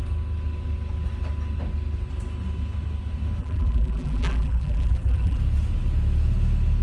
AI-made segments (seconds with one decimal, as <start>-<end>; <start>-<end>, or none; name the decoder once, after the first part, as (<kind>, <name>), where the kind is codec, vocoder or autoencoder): 3.4-5.4 (vocoder, BigVGAN v2)